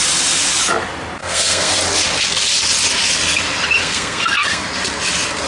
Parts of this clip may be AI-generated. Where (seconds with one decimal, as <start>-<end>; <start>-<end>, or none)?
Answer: 1.2-1.7; 3.8-4.6